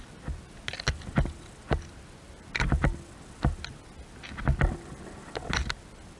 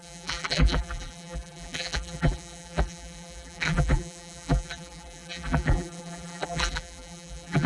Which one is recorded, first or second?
first